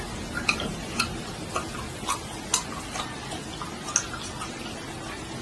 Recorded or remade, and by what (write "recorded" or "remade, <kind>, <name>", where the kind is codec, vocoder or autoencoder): recorded